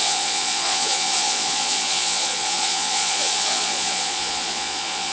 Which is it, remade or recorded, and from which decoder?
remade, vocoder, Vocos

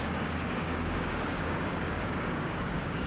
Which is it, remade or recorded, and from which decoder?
remade, codec, DAC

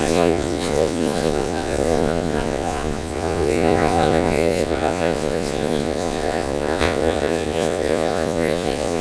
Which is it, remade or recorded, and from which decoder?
remade, vocoder, Vocos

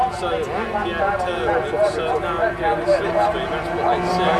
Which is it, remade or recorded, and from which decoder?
recorded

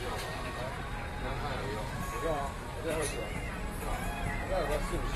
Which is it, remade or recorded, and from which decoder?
remade, vocoder, BigVGAN v2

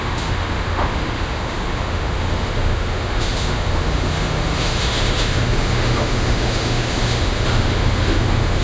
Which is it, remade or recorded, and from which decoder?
remade, autoencoder, DAC-VAE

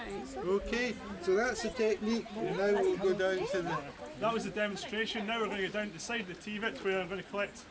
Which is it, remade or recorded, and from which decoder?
recorded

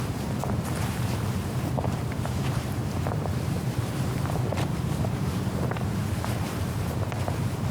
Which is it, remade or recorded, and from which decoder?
remade, vocoder, BigVGAN v2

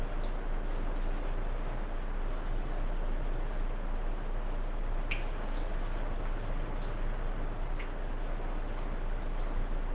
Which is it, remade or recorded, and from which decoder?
recorded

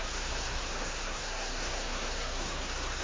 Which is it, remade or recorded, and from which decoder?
remade, codec, SNAC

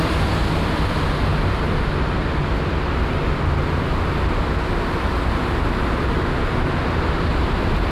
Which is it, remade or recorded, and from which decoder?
recorded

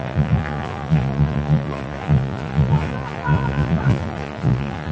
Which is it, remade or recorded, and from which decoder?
remade, vocoder, Vocos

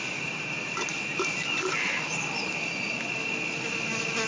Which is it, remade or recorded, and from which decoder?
recorded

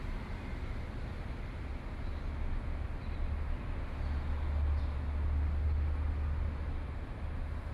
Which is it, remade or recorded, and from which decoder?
recorded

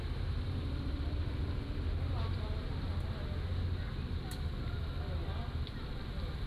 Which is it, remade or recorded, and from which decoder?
recorded